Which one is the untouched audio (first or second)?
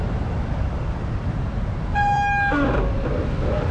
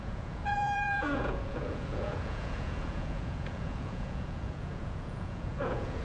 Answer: first